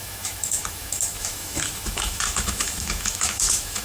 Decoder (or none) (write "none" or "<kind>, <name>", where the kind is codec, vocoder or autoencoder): autoencoder, DAC-VAE